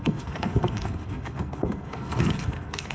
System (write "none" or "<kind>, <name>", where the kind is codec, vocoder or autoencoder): codec, SNAC